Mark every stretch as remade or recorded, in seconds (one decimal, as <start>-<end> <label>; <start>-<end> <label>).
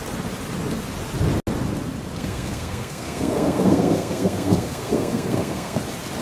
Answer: 0.0-2.1 recorded; 2.1-5.8 remade; 5.8-6.2 recorded